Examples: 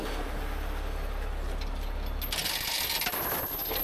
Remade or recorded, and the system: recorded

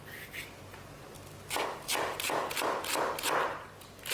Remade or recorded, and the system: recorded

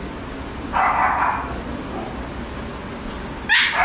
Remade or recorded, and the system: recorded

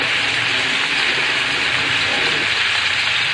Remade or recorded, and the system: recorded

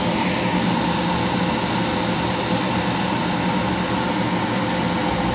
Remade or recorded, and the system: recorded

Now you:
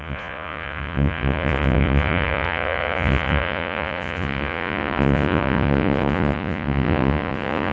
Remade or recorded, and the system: remade, vocoder, Vocos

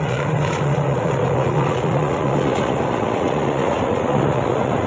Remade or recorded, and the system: remade, vocoder, Vocos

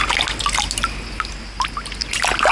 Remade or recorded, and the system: recorded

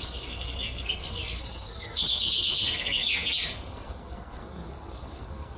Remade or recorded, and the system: remade, codec, SNAC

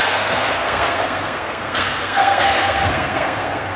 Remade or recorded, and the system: remade, codec, SNAC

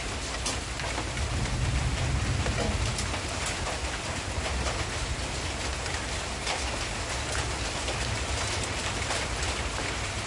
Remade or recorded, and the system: recorded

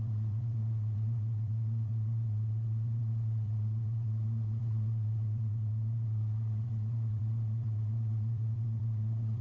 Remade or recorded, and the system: remade, vocoder, WaveNeXt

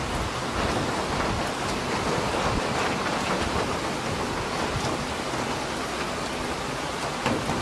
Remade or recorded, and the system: recorded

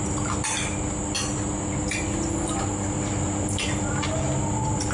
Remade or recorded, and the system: recorded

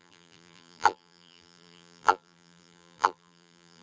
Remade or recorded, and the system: remade, vocoder, BigVGAN v2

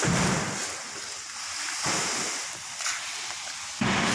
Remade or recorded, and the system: recorded